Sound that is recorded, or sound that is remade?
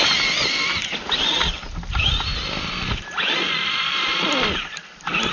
recorded